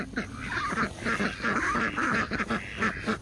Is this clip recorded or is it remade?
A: recorded